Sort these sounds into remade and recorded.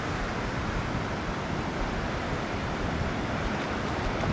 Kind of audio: recorded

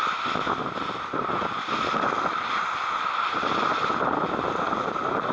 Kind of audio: recorded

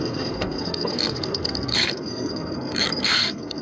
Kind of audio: remade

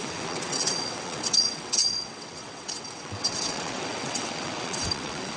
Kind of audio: remade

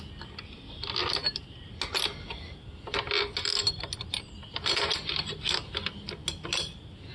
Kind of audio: recorded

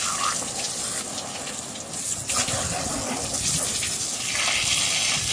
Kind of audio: recorded